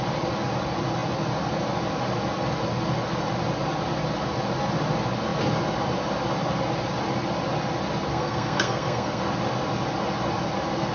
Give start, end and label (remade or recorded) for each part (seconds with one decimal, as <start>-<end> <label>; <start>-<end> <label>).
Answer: 0.0-8.1 recorded; 8.1-9.2 remade; 9.2-10.9 recorded